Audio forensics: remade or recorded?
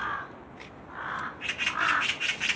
recorded